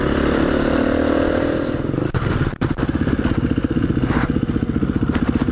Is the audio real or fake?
real